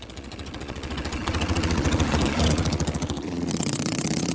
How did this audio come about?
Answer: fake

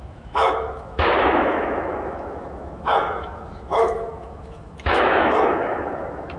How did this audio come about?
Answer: fake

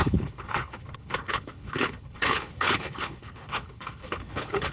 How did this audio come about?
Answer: fake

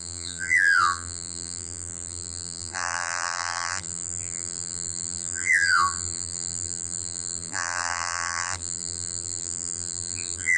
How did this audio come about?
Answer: fake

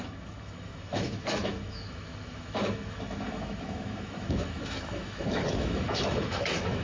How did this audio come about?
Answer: fake